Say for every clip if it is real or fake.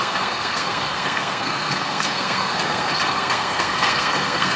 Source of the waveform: fake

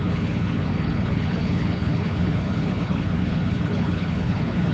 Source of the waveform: fake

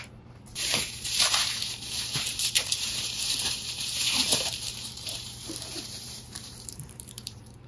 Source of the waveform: fake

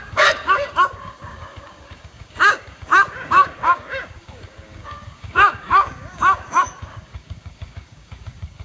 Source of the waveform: fake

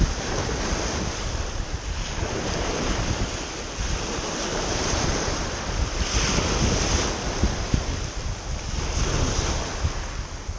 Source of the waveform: real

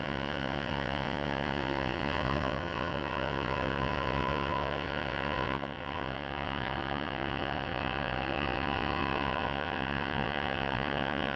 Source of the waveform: fake